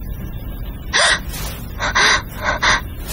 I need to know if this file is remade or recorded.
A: recorded